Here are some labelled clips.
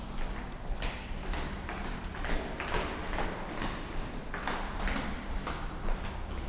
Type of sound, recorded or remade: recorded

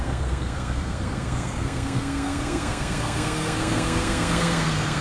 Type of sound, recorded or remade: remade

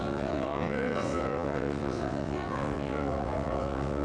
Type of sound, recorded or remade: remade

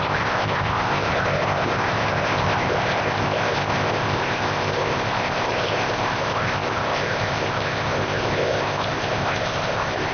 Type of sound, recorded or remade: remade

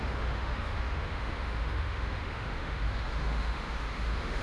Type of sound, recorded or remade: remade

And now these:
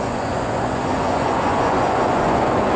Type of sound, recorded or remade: remade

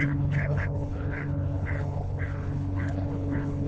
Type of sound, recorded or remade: remade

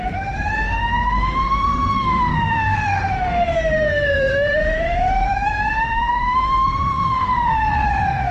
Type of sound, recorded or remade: remade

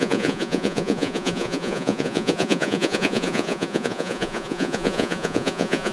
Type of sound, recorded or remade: remade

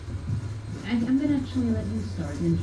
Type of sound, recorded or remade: recorded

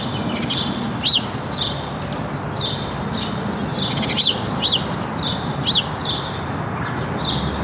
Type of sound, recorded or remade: recorded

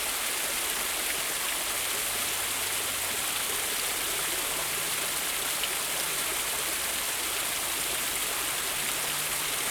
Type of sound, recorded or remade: recorded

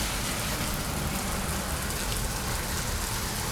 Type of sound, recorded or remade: recorded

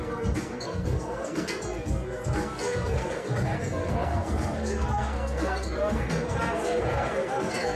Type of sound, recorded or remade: remade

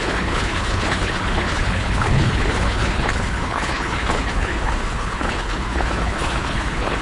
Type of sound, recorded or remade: remade